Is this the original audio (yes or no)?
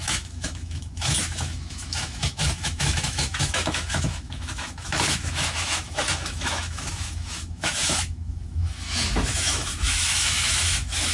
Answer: no